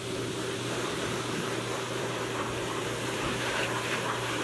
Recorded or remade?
remade